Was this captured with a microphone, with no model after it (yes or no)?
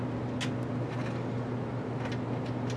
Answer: yes